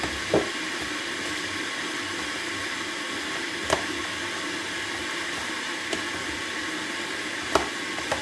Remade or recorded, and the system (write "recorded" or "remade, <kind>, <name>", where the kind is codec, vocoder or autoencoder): recorded